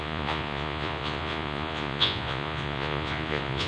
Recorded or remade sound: remade